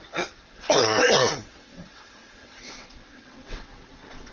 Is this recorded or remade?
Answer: remade